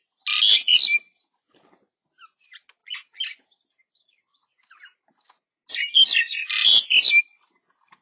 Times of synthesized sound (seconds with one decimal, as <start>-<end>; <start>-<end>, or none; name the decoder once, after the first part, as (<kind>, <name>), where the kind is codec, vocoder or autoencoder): none